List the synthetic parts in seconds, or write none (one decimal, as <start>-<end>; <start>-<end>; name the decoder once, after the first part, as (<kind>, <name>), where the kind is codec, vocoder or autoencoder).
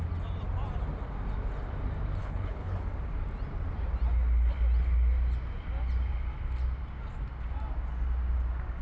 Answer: 2.2-2.8 (codec, HILCodec)